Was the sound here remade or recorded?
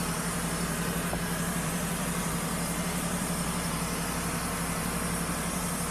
remade